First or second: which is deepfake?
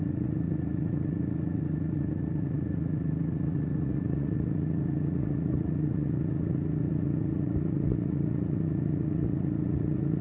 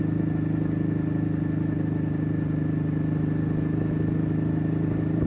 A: first